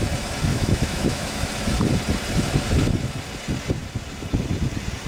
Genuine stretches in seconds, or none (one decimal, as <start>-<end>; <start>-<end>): 0.0-0.5; 1.5-5.1